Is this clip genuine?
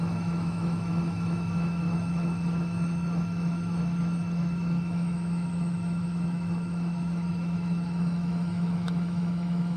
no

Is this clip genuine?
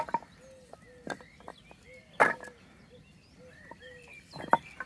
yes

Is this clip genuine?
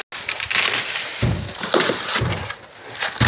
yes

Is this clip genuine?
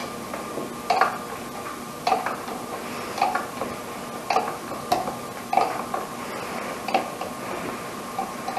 yes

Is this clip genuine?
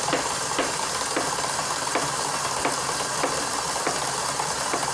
yes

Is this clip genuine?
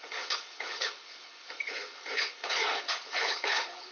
no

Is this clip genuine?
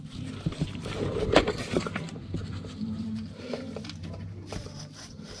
no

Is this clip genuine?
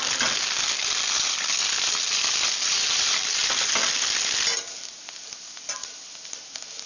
yes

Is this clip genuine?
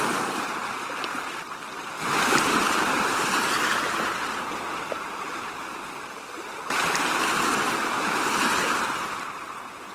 yes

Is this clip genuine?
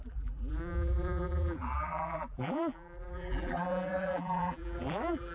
no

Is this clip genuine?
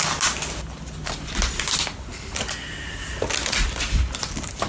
yes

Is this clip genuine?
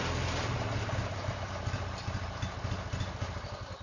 yes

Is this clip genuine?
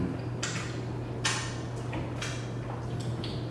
yes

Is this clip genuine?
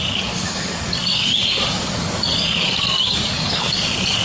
no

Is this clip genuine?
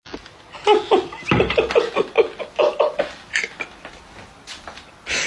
yes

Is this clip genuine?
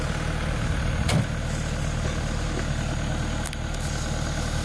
yes